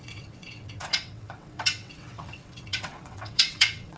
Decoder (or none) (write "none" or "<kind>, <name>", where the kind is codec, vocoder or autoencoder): vocoder, WaveNeXt